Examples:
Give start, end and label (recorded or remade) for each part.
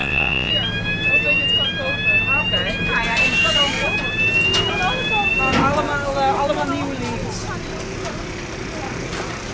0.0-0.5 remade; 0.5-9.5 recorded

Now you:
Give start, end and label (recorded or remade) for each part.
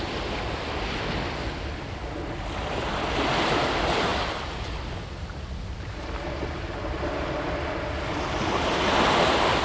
0.0-9.6 recorded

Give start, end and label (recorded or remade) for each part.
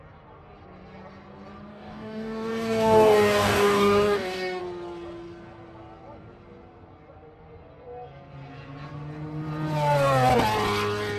0.0-1.7 recorded; 1.7-4.6 remade; 4.6-11.2 recorded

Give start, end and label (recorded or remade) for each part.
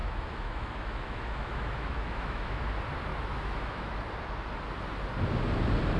0.0-2.6 remade; 2.6-3.1 recorded; 3.1-3.9 remade; 3.9-6.0 recorded